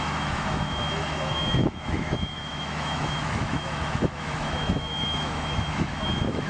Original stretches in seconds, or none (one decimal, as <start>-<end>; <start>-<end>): none